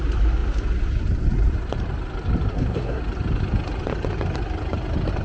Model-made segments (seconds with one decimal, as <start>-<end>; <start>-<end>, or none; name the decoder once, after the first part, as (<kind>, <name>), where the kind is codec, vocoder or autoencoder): 2.5-3.0 (codec, SNAC)